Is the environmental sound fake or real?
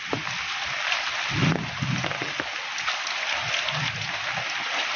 real